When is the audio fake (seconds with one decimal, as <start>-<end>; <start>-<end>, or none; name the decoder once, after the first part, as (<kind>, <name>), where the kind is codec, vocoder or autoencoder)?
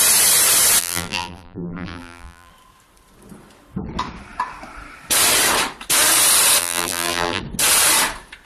0.8-2.5 (vocoder, BigVGAN v2); 6.6-7.4